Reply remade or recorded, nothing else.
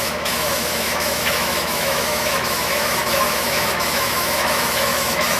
remade